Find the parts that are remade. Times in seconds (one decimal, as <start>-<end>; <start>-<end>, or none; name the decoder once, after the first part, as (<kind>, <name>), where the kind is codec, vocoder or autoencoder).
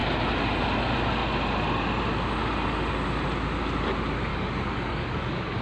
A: 4.3-5.6 (codec, DAC)